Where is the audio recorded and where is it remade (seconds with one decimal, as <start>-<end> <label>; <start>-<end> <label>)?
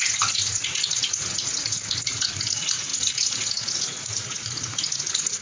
0.0-5.4 remade